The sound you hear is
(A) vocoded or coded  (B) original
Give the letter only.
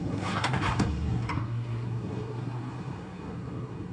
A